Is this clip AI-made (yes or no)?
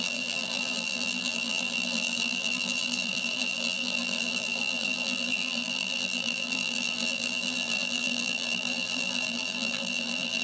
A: yes